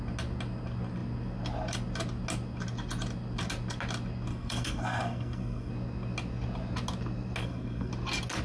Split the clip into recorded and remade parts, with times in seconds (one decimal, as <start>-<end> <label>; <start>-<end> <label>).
0.0-4.3 recorded; 4.3-5.7 remade; 5.7-7.4 recorded; 7.4-7.9 remade; 7.9-8.4 recorded